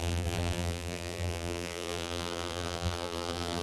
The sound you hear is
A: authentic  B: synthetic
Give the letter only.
B